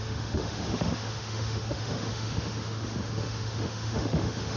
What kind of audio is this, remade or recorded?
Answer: remade